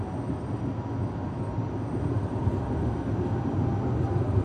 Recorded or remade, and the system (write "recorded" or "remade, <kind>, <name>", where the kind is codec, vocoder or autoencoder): remade, vocoder, BigVGAN v2